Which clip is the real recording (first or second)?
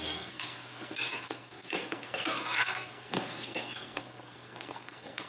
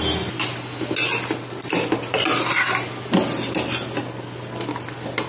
second